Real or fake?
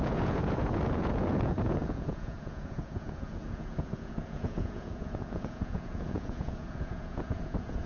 fake